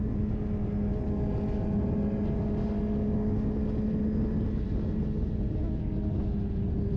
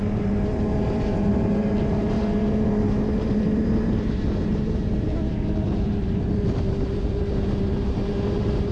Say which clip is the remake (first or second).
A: second